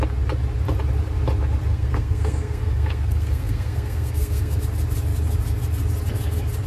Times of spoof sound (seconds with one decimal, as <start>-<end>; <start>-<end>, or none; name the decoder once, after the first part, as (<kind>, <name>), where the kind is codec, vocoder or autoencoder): 1.7-4.6 (codec, SNAC)